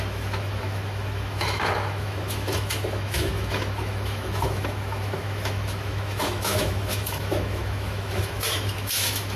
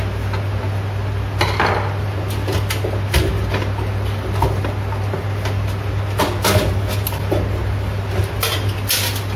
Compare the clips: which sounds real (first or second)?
second